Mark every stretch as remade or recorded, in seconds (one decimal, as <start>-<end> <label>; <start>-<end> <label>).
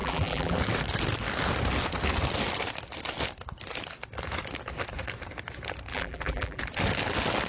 0.0-0.6 remade; 0.6-5.9 recorded; 5.9-6.6 remade; 6.6-7.5 recorded